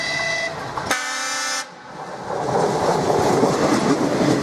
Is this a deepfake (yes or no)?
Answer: no